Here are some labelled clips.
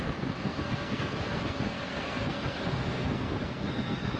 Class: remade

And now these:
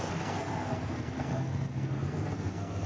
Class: remade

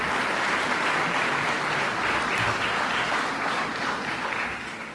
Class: recorded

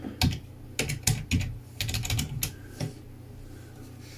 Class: recorded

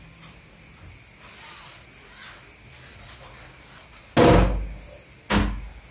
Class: recorded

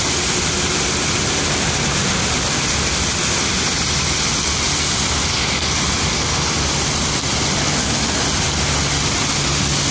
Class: recorded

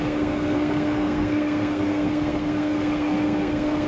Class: remade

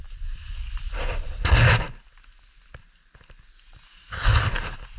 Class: recorded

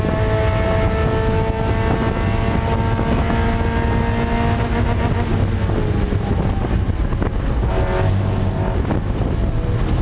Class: recorded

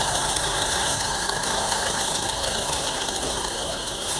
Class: remade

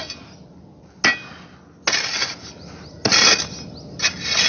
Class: recorded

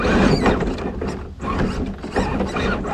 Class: recorded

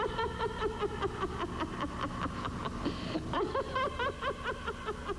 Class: recorded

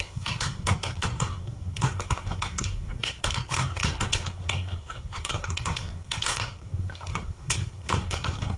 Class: remade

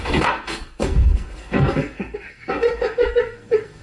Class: remade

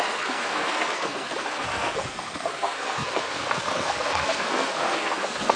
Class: remade